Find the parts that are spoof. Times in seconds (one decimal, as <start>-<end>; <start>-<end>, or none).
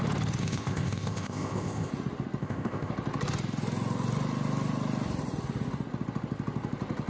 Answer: 0.4-1.9; 2.4-2.9